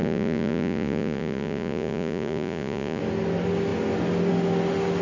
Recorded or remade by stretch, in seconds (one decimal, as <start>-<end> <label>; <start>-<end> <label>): 0.0-3.0 remade; 3.0-5.0 recorded